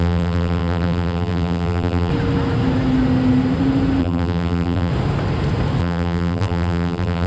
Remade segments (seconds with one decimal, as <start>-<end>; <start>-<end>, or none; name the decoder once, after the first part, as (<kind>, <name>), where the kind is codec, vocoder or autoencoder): 0.0-2.1 (vocoder, BigVGAN v2); 4.0-4.9; 5.8-7.3